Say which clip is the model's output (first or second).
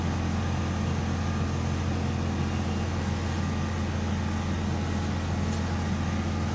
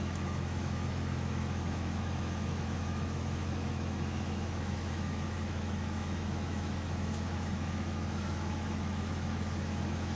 second